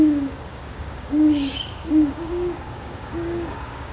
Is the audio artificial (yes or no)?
yes